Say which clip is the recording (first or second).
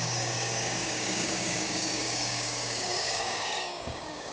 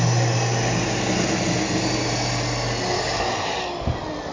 second